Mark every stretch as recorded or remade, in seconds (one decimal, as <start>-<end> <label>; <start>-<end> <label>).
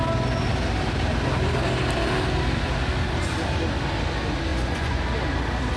0.0-4.5 recorded; 4.5-5.0 remade; 5.0-5.8 recorded